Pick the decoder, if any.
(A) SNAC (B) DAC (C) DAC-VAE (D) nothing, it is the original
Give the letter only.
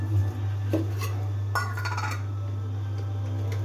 D